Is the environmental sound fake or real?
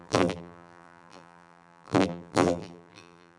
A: fake